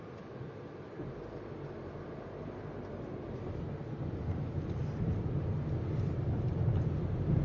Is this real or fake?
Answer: real